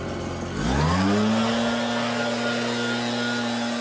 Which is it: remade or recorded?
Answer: recorded